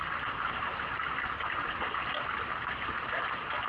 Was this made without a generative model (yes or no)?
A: no